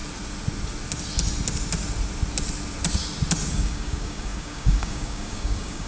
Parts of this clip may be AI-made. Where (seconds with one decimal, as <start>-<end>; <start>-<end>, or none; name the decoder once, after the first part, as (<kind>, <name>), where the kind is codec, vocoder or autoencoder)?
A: 3.5-5.9 (codec, DAC)